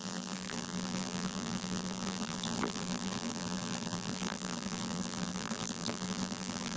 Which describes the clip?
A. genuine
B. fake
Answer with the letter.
B